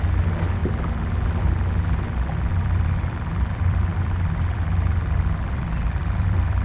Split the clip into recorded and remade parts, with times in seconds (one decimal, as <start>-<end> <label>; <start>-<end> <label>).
0.0-2.5 recorded; 2.5-6.6 remade